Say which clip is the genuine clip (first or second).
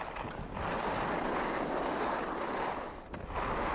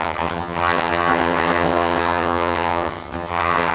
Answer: first